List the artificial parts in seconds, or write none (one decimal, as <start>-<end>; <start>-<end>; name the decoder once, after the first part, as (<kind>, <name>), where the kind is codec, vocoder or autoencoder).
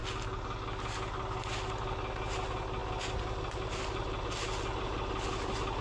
none